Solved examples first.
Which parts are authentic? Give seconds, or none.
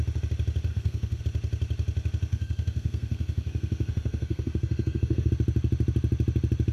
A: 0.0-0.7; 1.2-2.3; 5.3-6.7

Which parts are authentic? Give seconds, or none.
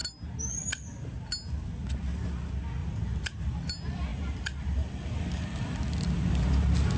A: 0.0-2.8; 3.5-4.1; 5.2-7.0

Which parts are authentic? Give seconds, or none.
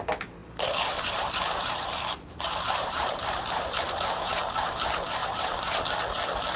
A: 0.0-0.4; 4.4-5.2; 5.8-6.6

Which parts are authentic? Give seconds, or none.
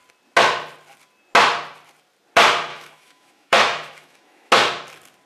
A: 0.0-2.7; 4.5-5.3